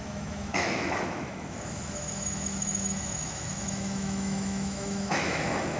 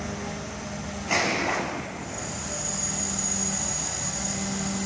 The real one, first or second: second